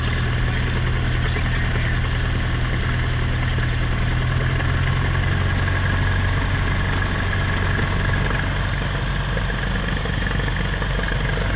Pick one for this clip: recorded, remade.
recorded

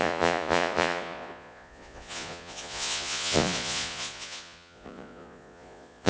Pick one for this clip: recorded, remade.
remade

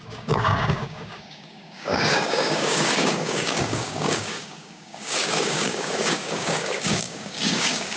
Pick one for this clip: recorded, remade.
remade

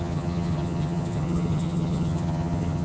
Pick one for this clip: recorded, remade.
remade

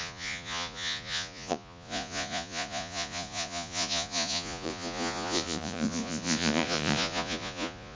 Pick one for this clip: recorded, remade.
remade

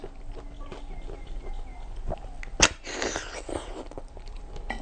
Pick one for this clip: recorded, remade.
recorded